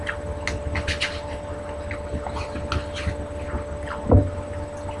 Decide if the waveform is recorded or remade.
recorded